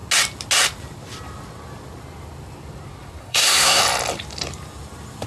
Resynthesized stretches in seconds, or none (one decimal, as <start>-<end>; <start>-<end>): 3.2-3.8